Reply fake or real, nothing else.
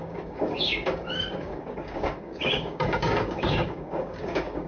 fake